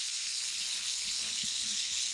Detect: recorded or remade remade